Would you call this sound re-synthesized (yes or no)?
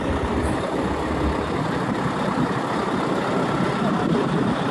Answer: no